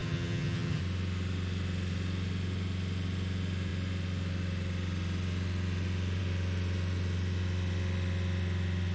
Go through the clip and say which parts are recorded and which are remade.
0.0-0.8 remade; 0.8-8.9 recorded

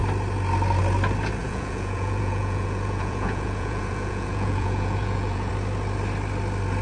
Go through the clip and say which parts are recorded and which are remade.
0.0-1.4 recorded; 1.4-5.5 remade; 5.5-6.8 recorded

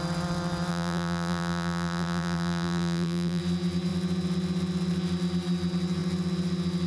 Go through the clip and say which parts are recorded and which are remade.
0.0-0.7 recorded; 0.7-3.4 remade; 3.4-6.9 recorded

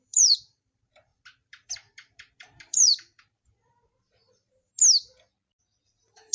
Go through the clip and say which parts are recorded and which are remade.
0.0-4.7 remade; 4.7-5.8 recorded; 5.8-6.3 remade

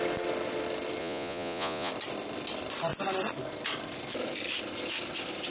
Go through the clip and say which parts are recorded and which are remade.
0.0-1.0 recorded; 1.0-1.9 remade; 1.9-5.5 recorded

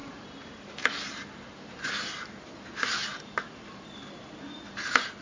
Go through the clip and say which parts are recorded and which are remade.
0.0-2.3 remade; 2.3-3.1 recorded; 3.1-4.3 remade; 4.3-5.2 recorded